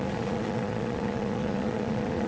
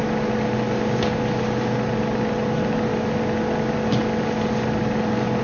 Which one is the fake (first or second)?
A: first